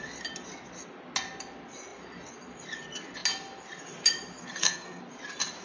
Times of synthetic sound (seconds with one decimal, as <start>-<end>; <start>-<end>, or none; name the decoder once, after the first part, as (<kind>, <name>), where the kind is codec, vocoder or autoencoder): 4.4-5.0 (codec, SNAC)